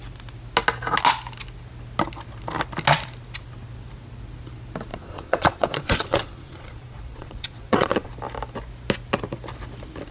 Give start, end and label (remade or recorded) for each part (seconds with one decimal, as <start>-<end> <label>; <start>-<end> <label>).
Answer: 0.0-4.9 recorded; 4.9-8.1 remade; 8.1-10.1 recorded